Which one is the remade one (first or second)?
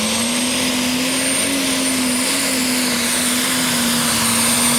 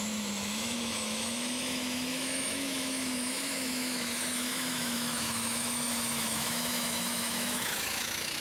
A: second